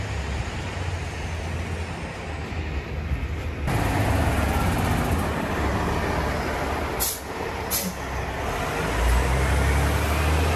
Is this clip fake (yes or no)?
no